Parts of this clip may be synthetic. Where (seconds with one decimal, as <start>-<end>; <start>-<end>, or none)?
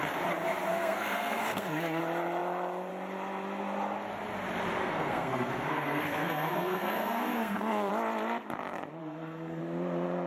0.7-2.0; 4.8-7.9; 9.0-9.6